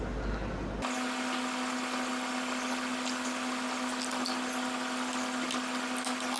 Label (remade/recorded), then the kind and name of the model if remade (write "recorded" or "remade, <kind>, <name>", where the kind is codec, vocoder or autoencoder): recorded